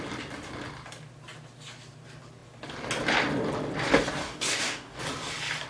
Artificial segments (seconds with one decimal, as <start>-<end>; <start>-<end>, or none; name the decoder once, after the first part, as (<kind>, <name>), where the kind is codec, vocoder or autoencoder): 4.2-5.0 (codec, DAC)